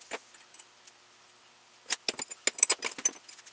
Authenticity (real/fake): real